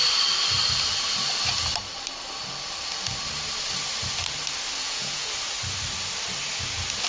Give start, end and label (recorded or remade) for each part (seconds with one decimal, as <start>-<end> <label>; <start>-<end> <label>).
0.0-4.8 recorded; 4.8-5.3 remade; 5.3-7.1 recorded